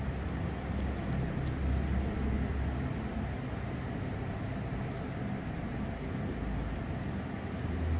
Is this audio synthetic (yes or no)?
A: no